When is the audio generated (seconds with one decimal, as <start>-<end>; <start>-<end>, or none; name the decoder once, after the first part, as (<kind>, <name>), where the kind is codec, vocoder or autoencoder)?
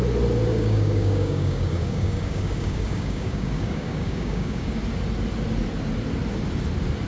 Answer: 0.5-4.8 (codec, DAC)